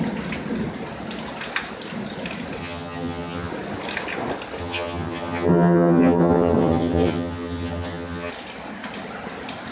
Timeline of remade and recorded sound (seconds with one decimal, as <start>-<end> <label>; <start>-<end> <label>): 0.0-2.6 recorded; 2.6-3.5 remade; 3.5-4.6 recorded; 4.6-8.3 remade; 8.3-9.7 recorded